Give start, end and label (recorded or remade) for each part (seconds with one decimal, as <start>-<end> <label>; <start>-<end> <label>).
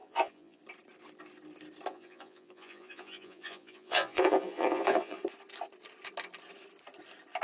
0.0-0.6 remade; 0.6-1.9 recorded; 1.9-5.2 remade; 5.2-7.4 recorded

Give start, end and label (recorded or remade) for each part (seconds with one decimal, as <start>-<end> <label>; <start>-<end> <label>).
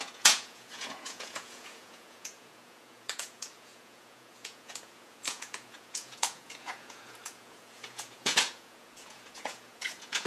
0.0-10.3 remade